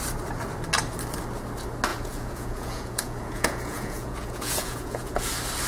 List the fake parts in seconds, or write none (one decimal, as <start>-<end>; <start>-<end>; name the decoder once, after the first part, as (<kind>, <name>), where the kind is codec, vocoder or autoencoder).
1.9-5.3 (vocoder, Vocos)